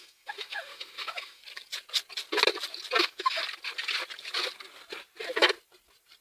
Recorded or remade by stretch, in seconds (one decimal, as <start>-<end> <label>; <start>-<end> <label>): 0.0-1.4 remade; 1.4-3.0 recorded; 3.0-3.4 remade; 3.4-6.2 recorded